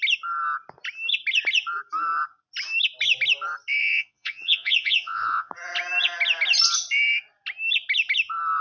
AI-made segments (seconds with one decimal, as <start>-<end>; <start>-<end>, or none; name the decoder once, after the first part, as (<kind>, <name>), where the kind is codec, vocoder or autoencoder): 3.8-5.5 (vocoder, Vocos)

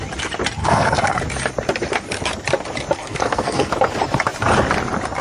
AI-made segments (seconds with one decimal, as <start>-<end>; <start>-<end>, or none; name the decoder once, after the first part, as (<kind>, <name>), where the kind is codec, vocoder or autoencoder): 0.6-1.2 (codec, SNAC); 3.0-3.7

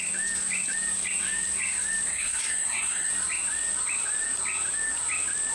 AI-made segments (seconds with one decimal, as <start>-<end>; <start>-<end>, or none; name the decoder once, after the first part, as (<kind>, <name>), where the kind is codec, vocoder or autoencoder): 2.1-3.1 (codec, SNAC)

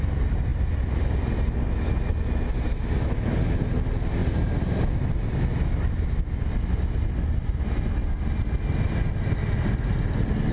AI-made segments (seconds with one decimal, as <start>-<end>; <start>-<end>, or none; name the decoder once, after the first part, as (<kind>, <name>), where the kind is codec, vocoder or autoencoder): none

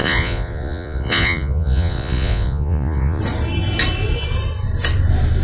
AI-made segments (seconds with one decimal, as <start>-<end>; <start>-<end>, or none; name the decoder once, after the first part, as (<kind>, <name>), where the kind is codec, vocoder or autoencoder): 0.0-3.2 (vocoder, Vocos)

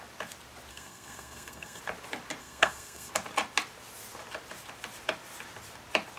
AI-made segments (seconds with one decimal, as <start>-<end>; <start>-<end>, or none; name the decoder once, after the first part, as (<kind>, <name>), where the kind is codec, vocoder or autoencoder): 0.7-1.8 (codec, SNAC); 2.4-3.1